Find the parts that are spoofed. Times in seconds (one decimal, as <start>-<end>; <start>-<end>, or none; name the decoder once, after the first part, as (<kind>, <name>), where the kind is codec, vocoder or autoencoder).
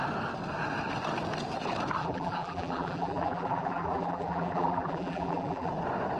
2.0-5.7 (vocoder, BigVGAN v2)